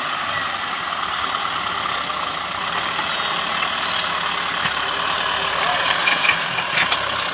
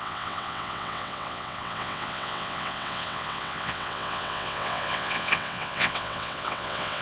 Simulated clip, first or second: second